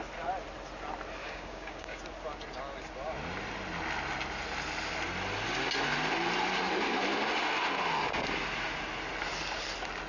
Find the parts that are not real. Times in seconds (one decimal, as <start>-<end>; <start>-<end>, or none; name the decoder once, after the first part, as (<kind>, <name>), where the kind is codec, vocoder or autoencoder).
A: 1.2-2.0 (codec, DAC)